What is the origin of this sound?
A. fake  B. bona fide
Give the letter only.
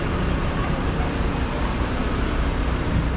A